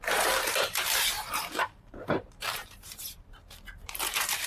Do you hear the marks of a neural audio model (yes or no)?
yes